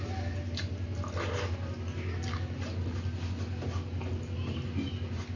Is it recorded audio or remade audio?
recorded